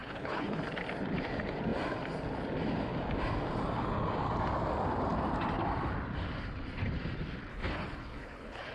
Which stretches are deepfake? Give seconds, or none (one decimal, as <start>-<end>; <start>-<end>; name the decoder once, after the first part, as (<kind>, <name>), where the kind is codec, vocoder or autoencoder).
0.0-0.6 (codec, HILCodec); 7.5-8.7